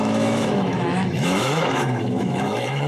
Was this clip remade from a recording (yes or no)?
yes